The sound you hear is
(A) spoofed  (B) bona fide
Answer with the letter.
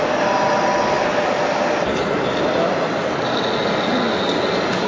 B